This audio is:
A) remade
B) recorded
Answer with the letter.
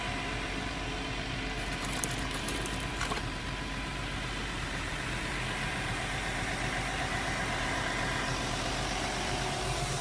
A